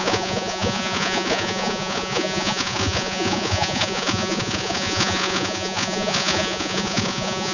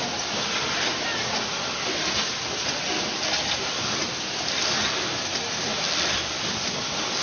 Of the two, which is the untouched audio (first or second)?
second